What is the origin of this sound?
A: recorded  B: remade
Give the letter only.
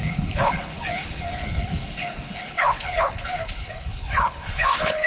B